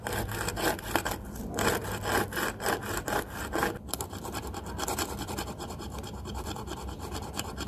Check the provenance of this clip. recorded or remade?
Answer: remade